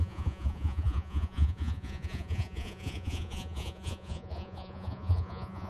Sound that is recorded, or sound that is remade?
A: remade